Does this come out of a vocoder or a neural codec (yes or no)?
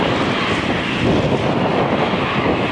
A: no